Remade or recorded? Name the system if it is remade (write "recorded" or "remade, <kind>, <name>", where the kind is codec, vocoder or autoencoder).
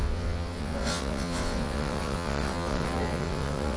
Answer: remade, vocoder, WaveNeXt